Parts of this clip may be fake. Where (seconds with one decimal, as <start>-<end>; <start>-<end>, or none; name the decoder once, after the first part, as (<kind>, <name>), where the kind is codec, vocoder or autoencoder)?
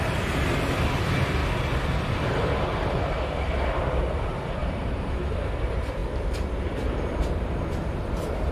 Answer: 0.0-1.4 (vocoder, BigVGAN v2); 3.5-8.5